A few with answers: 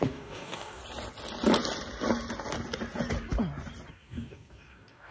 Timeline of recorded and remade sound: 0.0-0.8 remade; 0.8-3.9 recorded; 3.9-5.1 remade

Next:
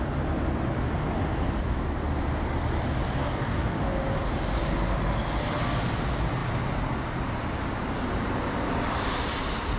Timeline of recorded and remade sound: 0.0-3.2 recorded; 3.2-3.8 remade; 3.8-9.8 recorded

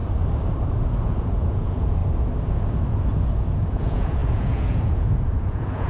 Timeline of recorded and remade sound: 0.0-0.8 recorded; 0.8-2.0 remade; 2.0-3.7 recorded; 3.7-5.9 remade